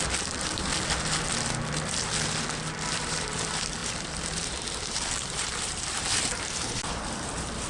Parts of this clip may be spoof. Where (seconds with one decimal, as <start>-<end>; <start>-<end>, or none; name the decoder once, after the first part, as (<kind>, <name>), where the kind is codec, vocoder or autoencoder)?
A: 0.0-0.7 (vocoder, BigVGAN v2); 2.9-7.7